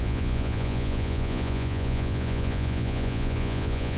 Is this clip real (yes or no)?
no